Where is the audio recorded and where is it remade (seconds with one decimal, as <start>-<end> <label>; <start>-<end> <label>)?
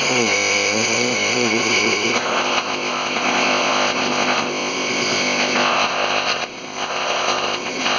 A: 0.0-8.0 remade